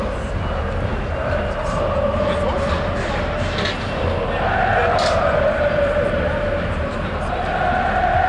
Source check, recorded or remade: recorded